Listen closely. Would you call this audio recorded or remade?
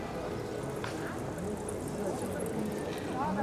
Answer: recorded